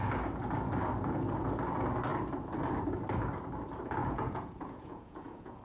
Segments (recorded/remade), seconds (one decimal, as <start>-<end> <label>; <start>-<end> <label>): 0.0-4.0 recorded; 4.0-5.6 remade